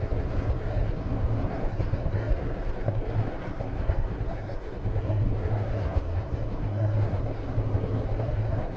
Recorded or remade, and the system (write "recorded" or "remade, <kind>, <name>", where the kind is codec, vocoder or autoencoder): remade, codec, SNAC